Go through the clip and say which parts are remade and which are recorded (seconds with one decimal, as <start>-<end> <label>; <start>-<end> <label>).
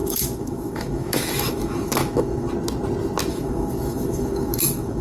0.0-2.5 remade; 2.5-3.3 recorded; 3.3-5.0 remade